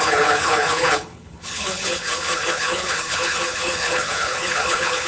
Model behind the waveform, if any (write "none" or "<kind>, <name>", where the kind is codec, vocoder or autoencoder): codec, HILCodec